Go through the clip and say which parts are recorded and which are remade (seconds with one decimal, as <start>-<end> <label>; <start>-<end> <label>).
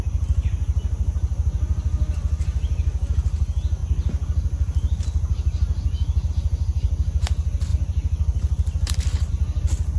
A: 0.0-7.7 recorded; 7.7-9.3 remade; 9.3-10.0 recorded